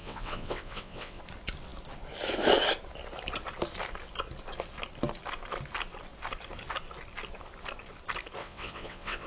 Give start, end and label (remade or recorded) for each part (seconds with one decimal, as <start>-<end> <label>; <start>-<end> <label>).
0.0-1.2 remade; 1.2-8.4 recorded; 8.4-9.3 remade